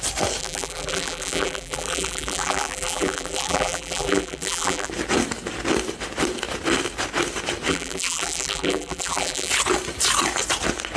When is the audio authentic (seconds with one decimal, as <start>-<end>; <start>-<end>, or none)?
0.0-0.4; 4.9-7.7; 9.5-11.0